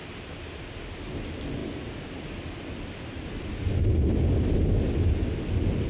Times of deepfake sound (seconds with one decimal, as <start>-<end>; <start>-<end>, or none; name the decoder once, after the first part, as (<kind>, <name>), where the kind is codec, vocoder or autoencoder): none

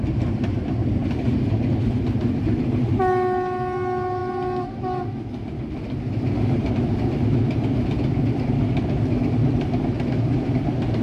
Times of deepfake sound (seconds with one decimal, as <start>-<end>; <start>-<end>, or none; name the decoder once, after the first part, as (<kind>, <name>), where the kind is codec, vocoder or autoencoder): none